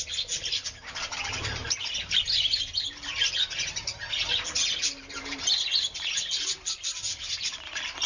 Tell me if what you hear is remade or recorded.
recorded